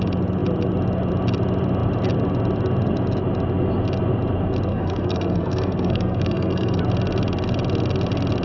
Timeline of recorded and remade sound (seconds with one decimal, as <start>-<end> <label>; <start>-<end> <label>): 0.0-4.7 recorded; 4.7-6.8 remade; 6.8-8.4 recorded